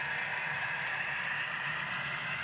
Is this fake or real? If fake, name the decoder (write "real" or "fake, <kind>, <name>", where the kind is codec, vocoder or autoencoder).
real